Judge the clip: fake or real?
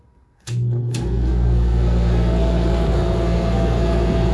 fake